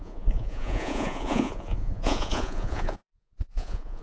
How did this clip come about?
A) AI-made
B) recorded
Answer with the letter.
A